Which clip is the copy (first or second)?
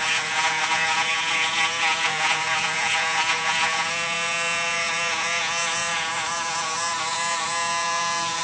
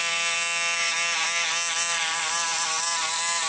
first